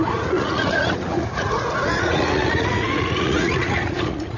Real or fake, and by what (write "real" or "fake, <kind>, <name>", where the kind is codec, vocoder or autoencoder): fake, vocoder, Vocos